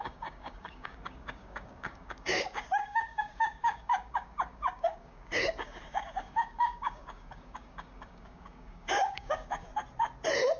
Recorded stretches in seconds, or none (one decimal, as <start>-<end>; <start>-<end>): 9.7-10.6